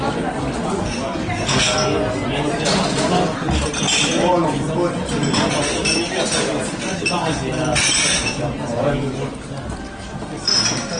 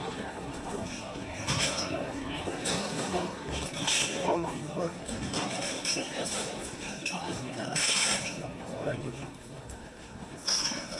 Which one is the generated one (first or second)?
second